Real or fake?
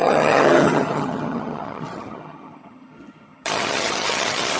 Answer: fake